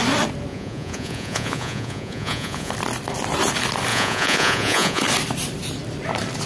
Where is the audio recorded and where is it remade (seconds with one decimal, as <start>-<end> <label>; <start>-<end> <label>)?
0.0-0.5 recorded; 0.5-2.7 remade; 2.7-3.9 recorded; 3.9-5.0 remade; 5.0-6.5 recorded